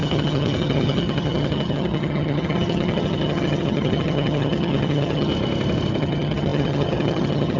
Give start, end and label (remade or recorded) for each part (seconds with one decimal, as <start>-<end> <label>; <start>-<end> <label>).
0.0-5.3 remade; 5.3-6.0 recorded; 6.0-7.6 remade